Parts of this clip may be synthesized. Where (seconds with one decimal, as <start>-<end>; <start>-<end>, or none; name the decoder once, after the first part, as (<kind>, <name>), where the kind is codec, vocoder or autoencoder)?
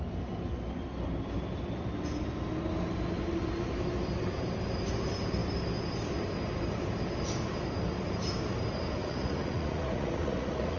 9.0-10.8 (vocoder, Vocos)